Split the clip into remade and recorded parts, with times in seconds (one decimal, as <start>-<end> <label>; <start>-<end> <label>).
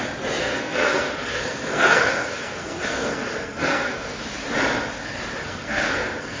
0.0-0.4 recorded; 0.4-4.2 remade; 4.2-5.4 recorded; 5.4-6.4 remade